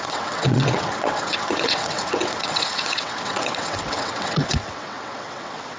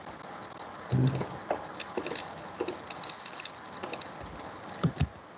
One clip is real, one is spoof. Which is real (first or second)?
second